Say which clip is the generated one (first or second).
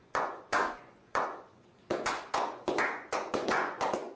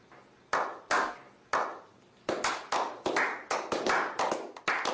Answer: first